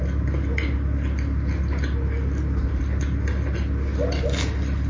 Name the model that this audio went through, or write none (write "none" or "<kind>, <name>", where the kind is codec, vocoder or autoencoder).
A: none